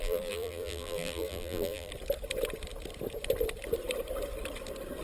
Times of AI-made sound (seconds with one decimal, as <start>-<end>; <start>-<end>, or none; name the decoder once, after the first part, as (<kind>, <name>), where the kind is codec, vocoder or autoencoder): 0.0-1.9 (vocoder, BigVGAN v2)